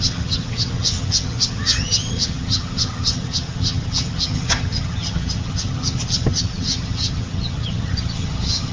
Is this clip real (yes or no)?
no